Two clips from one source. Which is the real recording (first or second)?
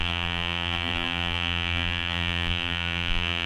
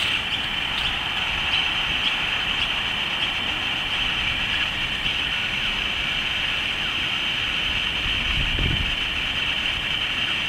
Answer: second